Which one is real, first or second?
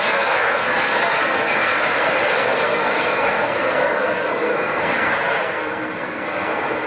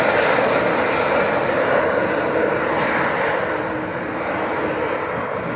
second